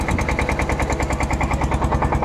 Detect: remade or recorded recorded